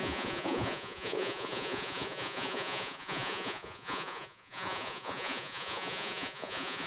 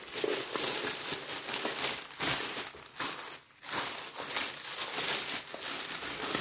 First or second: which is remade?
first